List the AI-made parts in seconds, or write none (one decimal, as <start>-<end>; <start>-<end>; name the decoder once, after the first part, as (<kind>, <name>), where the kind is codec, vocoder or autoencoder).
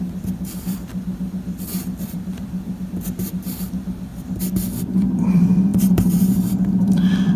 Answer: 0.0-4.1 (vocoder, BigVGAN v2); 4.8-7.4